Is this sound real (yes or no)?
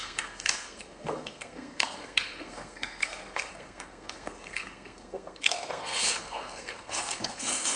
no